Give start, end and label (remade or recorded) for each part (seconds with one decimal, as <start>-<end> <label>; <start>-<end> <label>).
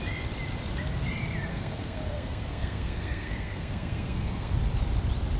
0.0-1.5 recorded; 1.5-4.5 remade; 4.5-5.4 recorded